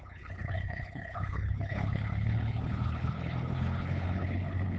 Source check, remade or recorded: remade